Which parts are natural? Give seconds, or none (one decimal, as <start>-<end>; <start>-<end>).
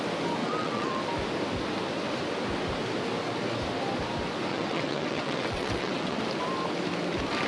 0.0-0.4; 1.0-4.5; 6.2-7.5